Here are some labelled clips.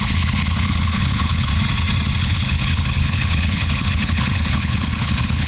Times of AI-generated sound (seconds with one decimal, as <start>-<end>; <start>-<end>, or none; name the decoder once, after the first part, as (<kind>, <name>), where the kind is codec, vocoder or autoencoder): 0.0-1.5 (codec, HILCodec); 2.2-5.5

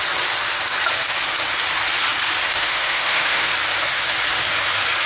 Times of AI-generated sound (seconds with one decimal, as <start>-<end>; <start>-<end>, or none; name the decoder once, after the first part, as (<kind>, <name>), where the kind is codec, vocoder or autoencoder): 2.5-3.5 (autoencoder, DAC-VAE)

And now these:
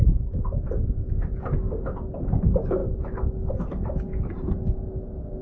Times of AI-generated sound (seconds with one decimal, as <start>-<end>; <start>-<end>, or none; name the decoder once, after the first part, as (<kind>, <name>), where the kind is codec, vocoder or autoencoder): none